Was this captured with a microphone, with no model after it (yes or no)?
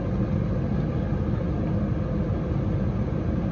yes